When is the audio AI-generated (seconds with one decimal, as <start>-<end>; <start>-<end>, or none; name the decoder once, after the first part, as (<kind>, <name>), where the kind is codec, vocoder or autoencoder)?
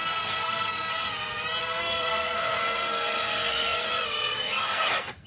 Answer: 0.0-0.9 (codec, SNAC); 1.6-5.3